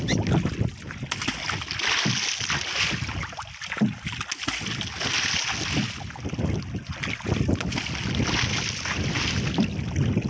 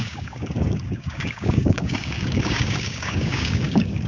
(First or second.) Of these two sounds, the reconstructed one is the second